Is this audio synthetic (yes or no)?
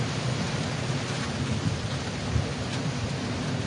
yes